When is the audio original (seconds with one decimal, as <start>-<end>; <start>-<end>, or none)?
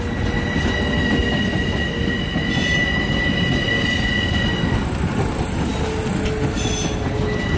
0.0-7.6